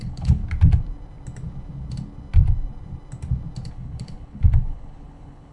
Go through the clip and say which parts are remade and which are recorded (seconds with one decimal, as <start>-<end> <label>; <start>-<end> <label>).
0.0-0.4 remade; 0.4-3.7 recorded; 3.7-5.5 remade